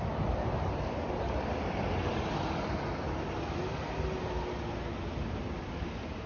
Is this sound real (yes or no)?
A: yes